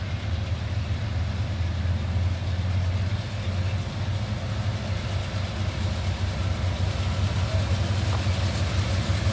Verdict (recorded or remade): recorded